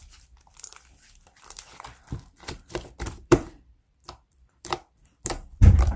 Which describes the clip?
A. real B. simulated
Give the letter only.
B